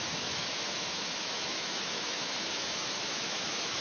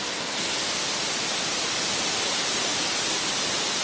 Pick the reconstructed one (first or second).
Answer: first